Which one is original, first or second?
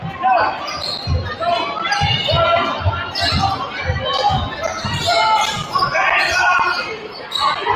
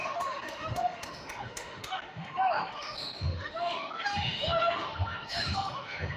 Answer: first